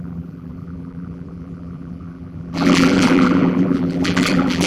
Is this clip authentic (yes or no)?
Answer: no